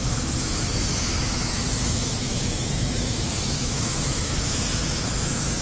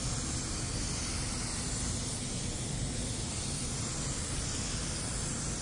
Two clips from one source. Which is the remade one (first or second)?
first